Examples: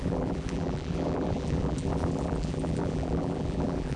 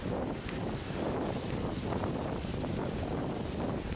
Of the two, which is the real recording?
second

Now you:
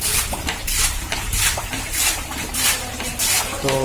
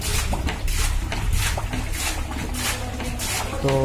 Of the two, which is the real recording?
second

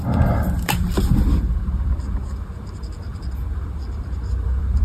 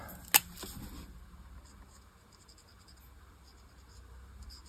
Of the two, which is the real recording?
second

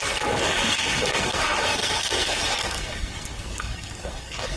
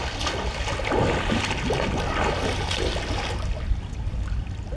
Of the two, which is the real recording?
second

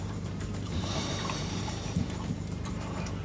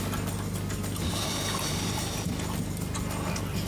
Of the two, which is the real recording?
second